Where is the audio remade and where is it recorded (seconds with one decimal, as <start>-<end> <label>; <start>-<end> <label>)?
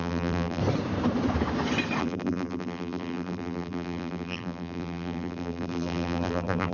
0.0-0.6 remade; 0.6-2.0 recorded; 2.0-6.7 remade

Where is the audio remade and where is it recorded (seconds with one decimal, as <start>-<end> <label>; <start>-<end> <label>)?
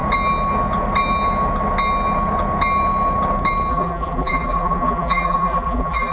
0.0-3.7 recorded; 3.7-6.1 remade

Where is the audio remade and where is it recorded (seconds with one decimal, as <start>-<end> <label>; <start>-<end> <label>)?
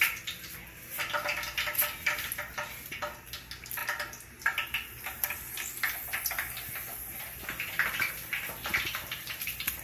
0.0-8.7 recorded; 8.7-9.8 remade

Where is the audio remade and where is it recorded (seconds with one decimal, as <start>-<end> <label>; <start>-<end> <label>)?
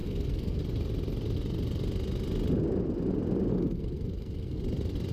0.0-0.6 remade; 0.6-3.5 recorded; 3.5-4.6 remade; 4.6-5.1 recorded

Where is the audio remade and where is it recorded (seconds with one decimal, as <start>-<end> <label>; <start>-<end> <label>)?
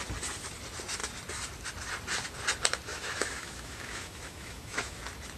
0.0-2.9 recorded; 2.9-5.0 remade; 5.0-5.4 recorded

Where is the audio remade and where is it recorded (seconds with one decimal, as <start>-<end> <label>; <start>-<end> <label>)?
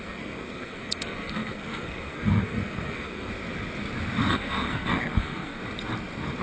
0.0-3.3 remade; 3.3-4.3 recorded; 4.3-5.6 remade; 5.6-6.4 recorded